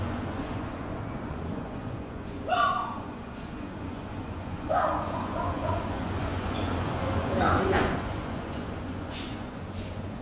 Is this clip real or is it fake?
fake